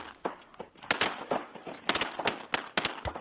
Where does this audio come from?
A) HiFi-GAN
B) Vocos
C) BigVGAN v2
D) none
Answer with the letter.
D